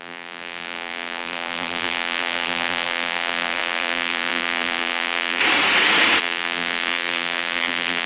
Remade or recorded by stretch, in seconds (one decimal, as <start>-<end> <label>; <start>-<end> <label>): 0.0-5.4 remade; 5.4-6.2 recorded; 6.2-8.1 remade